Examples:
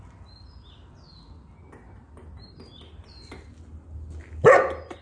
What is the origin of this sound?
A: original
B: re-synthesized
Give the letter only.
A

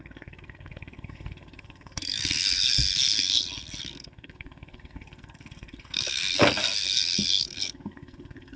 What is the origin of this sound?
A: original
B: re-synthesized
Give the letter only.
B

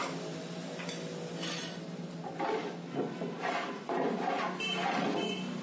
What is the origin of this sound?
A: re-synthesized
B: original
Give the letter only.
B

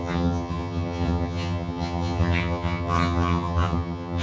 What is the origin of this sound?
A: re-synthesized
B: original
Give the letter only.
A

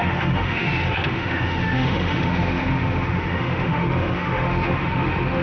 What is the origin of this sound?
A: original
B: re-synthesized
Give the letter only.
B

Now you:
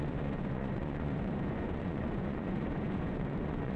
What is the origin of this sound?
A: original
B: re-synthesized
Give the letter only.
B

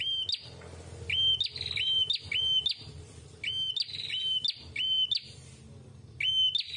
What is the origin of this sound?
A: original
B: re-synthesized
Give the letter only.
A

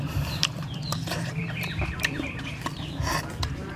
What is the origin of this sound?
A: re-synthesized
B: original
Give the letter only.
A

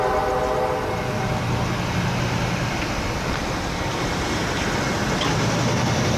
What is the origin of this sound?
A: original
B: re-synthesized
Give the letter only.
A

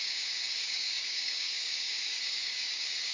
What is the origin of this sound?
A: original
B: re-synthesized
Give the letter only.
B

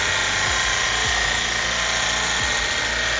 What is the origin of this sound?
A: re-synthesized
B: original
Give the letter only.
B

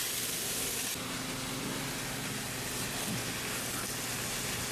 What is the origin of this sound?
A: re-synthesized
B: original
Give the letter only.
B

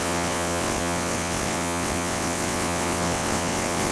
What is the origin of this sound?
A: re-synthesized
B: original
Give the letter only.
A